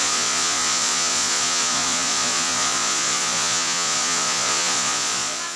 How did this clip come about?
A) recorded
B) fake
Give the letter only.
B